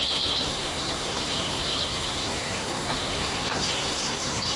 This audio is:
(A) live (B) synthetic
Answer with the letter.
B